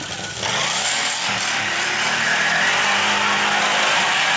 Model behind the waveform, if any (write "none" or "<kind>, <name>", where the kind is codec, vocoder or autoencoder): none